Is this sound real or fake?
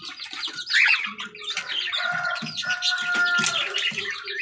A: real